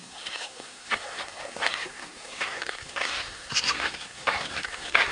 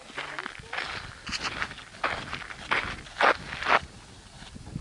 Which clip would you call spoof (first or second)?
first